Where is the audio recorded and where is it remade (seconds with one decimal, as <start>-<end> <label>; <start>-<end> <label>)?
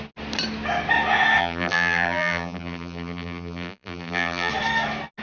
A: 0.0-1.4 recorded; 1.4-4.5 remade; 4.5-5.2 recorded